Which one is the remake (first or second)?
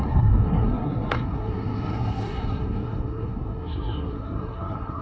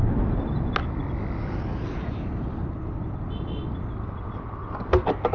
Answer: first